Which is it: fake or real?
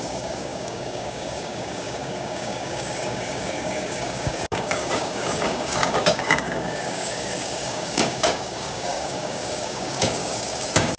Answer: fake